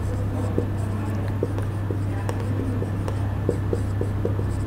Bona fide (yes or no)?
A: yes